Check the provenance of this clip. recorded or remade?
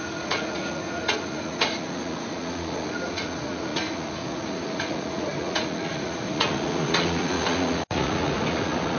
remade